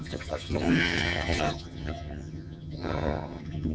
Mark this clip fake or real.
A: fake